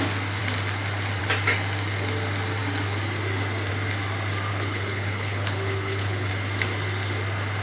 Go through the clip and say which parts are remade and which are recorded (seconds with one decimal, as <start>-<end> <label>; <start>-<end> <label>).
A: 0.0-4.5 recorded; 4.5-6.3 remade; 6.3-7.6 recorded